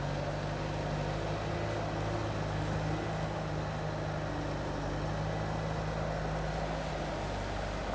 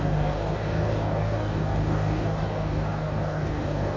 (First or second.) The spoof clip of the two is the second